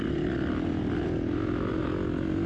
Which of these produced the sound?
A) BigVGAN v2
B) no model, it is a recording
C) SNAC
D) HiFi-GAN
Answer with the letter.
B